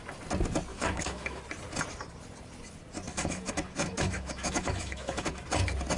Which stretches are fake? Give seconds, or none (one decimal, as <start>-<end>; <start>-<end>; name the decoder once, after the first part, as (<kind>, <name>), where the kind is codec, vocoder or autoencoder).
0.7-1.4 (autoencoder, DAC-VAE); 3.1-5.4